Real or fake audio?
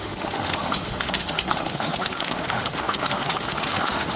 fake